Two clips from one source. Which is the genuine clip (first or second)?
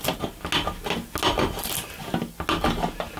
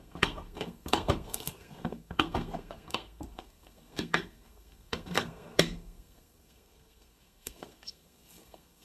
first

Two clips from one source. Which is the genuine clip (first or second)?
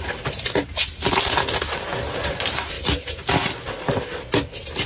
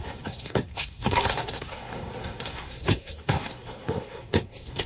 first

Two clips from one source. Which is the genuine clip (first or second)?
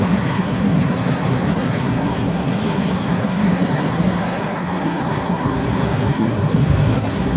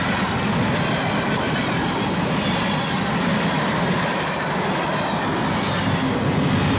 second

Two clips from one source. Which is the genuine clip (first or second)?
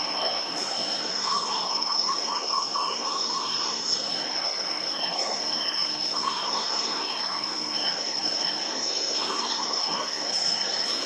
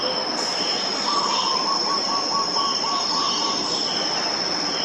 second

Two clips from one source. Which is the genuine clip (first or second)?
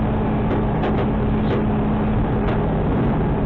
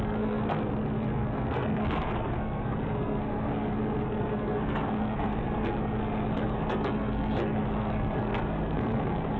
first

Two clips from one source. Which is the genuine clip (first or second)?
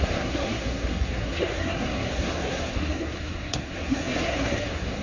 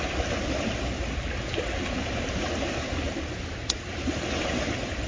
second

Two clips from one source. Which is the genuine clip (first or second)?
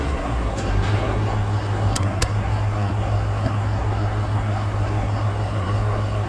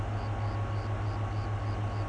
second